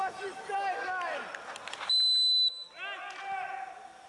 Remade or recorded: recorded